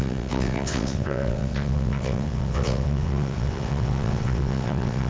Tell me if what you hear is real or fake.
fake